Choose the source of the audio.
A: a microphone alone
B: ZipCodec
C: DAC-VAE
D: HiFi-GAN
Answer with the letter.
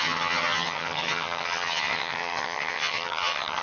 D